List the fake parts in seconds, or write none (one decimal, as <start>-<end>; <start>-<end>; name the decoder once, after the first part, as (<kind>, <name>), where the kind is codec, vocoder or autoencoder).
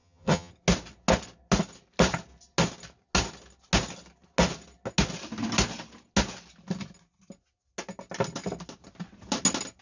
0.0-0.5 (vocoder, HiFi-GAN)